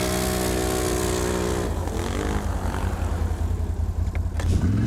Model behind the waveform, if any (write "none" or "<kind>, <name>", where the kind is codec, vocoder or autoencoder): none